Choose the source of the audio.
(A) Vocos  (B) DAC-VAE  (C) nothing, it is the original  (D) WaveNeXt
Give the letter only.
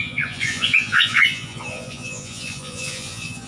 A